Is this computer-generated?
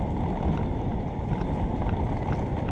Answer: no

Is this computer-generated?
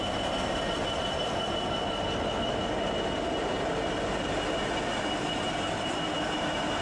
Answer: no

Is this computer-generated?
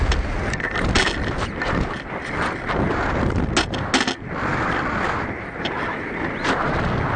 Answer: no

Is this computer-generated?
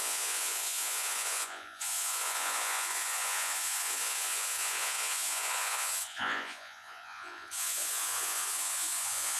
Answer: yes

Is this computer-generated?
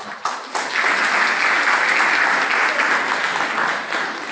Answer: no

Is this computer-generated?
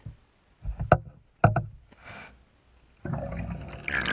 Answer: no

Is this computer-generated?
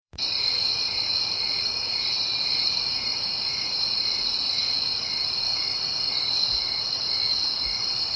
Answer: yes